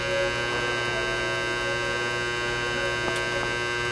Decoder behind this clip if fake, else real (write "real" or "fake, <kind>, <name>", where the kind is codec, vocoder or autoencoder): real